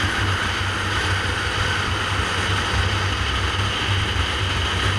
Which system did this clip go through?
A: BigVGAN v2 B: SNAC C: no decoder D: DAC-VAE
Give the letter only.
C